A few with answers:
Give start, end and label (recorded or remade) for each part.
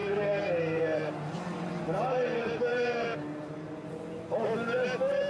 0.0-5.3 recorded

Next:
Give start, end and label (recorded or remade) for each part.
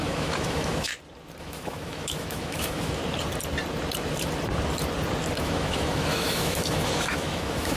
0.0-0.9 remade; 0.9-1.4 recorded; 1.4-3.0 remade; 3.0-5.4 recorded; 5.4-7.8 remade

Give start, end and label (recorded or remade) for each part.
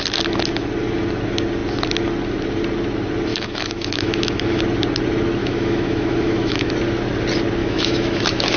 0.0-3.3 recorded; 3.3-4.6 remade; 4.6-5.4 recorded; 5.4-6.7 remade; 6.7-7.6 recorded; 7.6-8.6 remade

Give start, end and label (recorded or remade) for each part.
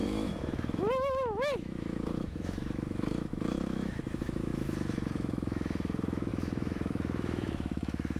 0.0-8.2 remade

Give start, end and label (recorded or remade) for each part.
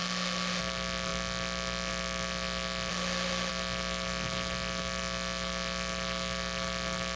0.0-0.6 remade; 0.6-2.9 recorded; 2.9-3.5 remade; 3.5-7.2 recorded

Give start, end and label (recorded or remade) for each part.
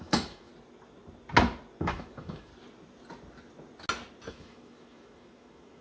0.0-0.5 remade; 0.5-1.8 recorded; 1.8-2.5 remade; 2.5-4.3 recorded; 4.3-5.8 remade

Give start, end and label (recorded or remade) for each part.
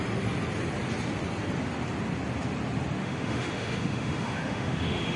0.0-3.0 recorded; 3.0-5.2 remade